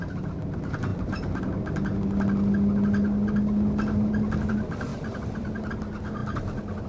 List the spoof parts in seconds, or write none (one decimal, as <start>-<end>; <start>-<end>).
0.9-1.4; 4.9-5.7

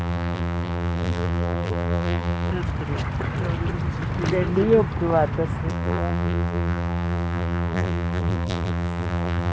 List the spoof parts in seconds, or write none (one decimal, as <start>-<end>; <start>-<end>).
0.0-2.5; 5.7-9.5

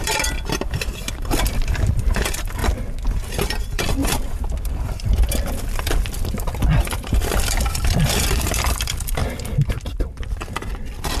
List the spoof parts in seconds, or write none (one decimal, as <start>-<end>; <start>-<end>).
0.0-2.6; 3.6-4.0; 4.6-9.2; 10.0-11.2